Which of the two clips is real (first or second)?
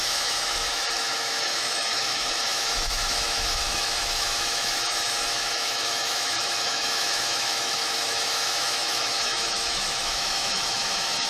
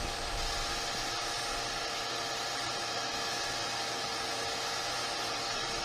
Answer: second